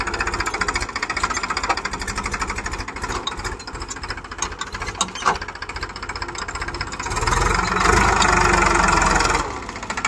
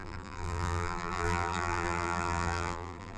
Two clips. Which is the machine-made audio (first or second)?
second